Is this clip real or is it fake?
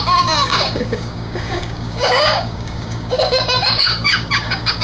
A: fake